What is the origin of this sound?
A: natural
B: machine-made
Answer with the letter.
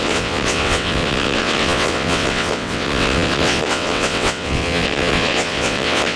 B